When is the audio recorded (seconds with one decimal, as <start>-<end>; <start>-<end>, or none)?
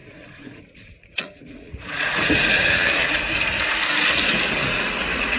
3.2-4.6